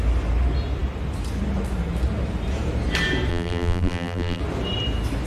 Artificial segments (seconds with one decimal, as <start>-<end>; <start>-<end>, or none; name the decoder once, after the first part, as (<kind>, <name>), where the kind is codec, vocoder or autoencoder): 3.3-4.4 (vocoder, BigVGAN v2)